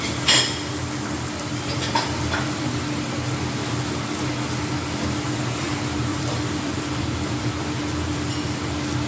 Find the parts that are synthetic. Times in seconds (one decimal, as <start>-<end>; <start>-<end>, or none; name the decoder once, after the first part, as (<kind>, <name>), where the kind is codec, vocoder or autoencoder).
6.1-7.5 (vocoder, BigVGAN v2)